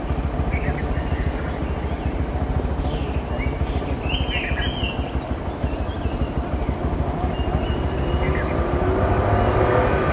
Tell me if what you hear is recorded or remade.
recorded